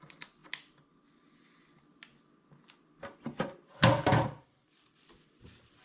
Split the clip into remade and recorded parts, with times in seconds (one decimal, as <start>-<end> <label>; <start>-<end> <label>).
0.0-5.8 recorded